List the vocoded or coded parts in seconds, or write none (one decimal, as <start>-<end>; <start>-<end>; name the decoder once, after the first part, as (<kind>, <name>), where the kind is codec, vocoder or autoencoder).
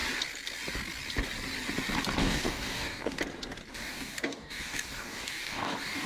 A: 2.2-3.2 (codec, DAC); 3.7-6.1